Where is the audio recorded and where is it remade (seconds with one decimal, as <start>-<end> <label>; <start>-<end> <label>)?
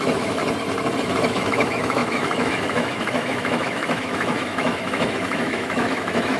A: 0.0-0.4 remade; 0.4-1.3 recorded; 1.3-6.4 remade